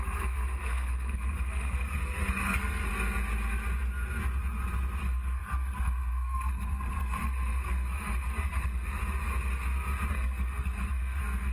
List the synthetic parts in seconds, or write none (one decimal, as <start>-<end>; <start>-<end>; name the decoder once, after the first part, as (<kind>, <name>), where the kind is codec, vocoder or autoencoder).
0.0-2.9 (codec, SNAC); 5.0-9.0; 10.1-11.5